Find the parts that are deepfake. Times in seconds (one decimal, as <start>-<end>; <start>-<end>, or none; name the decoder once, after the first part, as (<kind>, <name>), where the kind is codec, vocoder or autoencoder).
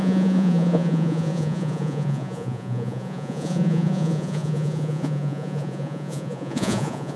0.0-7.2 (vocoder, Vocos)